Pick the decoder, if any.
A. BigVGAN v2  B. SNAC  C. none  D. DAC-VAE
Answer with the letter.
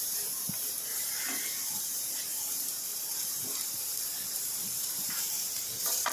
A